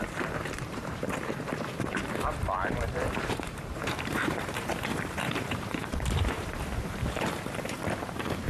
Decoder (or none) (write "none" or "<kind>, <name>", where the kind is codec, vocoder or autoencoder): vocoder, BigVGAN v2